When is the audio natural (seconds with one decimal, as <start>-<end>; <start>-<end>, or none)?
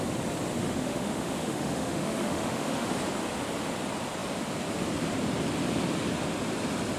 0.0-0.6; 2.9-7.0